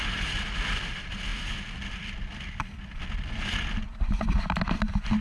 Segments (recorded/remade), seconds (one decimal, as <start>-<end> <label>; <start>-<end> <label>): 0.0-5.2 recorded